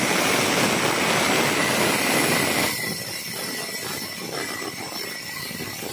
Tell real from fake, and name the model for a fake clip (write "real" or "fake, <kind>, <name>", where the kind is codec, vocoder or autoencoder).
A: real